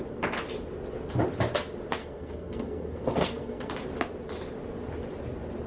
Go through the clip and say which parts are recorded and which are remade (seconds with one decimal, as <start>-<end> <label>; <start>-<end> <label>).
0.0-2.0 recorded; 2.0-3.7 remade; 3.7-5.7 recorded